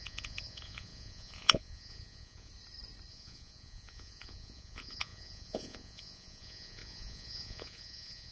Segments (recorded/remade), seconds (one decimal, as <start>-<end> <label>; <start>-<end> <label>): 0.0-2.5 remade; 2.5-3.1 recorded; 3.1-8.3 remade